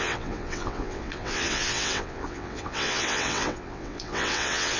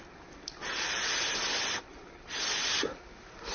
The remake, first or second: first